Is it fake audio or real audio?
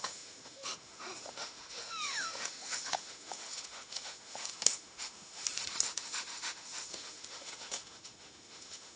fake